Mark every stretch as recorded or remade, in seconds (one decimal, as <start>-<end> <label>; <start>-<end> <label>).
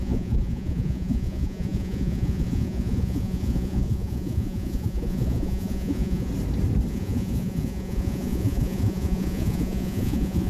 0.0-6.3 remade; 6.3-6.9 recorded; 6.9-10.5 remade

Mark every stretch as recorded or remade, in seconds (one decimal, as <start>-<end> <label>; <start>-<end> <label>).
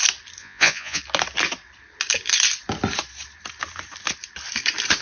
0.0-0.4 recorded; 0.4-1.0 remade; 1.0-5.0 recorded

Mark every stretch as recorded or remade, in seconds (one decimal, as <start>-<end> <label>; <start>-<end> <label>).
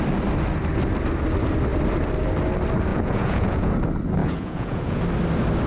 0.0-2.9 recorded; 2.9-3.7 remade; 3.7-4.2 recorded; 4.2-5.0 remade; 5.0-5.7 recorded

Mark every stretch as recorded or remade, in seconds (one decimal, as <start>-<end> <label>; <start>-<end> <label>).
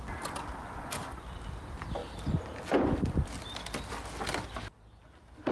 0.0-0.6 recorded; 0.6-1.3 remade; 1.3-5.5 recorded